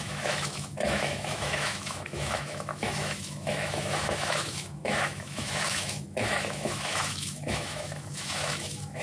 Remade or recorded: remade